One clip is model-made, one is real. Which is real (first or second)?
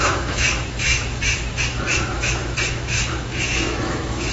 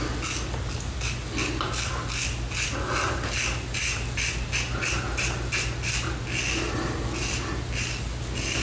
second